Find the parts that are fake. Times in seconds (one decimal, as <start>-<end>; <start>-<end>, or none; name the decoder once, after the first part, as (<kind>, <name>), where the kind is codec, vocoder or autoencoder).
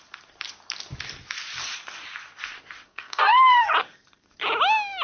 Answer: 2.9-3.7 (codec, SNAC)